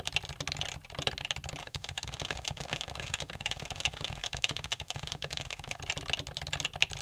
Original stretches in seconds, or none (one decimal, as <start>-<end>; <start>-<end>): 0.0-1.6; 5.8-7.0